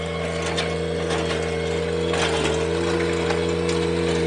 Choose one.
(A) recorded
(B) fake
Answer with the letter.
A